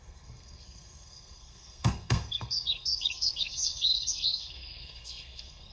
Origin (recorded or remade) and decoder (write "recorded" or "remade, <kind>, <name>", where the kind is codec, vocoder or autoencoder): remade, codec, SNAC